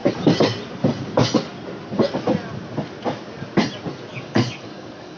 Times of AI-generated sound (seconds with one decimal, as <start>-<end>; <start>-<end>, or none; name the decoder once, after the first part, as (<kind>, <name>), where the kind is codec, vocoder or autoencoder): 4.1-5.2 (codec, DAC)